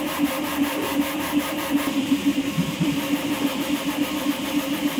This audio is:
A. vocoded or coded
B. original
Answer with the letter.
A